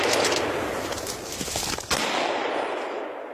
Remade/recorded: recorded